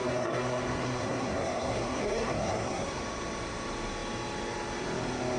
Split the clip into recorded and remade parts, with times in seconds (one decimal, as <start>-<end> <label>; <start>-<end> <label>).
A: 0.0-3.0 remade; 3.0-5.4 recorded